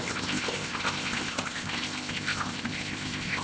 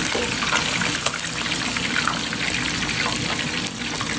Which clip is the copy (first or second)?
first